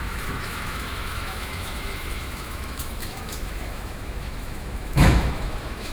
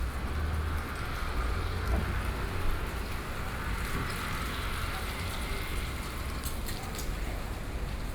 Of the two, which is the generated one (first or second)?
first